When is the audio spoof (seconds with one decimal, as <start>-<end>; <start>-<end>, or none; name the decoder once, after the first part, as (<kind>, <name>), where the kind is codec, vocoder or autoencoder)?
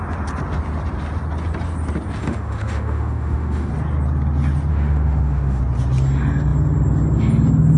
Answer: 2.2-3.7 (autoencoder, DAC-VAE); 4.7-5.6